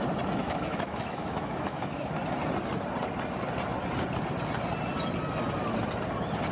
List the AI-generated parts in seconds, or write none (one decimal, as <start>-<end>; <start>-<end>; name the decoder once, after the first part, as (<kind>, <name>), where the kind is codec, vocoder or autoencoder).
0.4-2.0 (autoencoder, DAC-VAE)